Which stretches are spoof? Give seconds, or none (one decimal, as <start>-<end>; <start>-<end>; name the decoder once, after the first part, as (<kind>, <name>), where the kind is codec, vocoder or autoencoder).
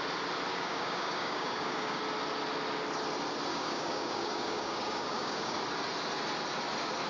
0.5-2.0 (codec, DAC); 3.5-5.6